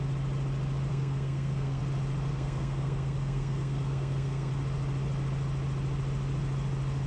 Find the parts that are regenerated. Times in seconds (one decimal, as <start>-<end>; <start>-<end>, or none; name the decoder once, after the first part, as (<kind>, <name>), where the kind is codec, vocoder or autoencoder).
0.9-1.8 (codec, SNAC); 2.3-4.5